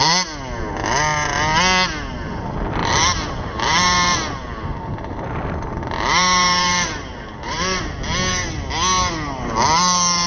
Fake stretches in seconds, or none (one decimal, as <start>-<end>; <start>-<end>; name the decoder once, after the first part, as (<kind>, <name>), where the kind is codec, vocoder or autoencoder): 2.8-7.8 (vocoder, BigVGAN v2)